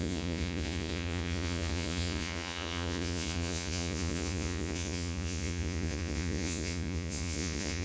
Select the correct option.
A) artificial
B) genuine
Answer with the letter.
A